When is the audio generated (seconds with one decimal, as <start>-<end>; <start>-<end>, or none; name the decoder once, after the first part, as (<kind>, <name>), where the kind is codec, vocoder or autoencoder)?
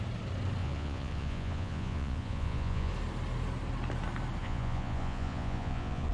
0.6-2.9 (vocoder, Vocos); 4.4-6.1